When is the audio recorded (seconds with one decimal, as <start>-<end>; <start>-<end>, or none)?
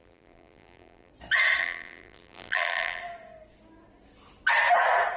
1.1-1.6; 3.0-5.2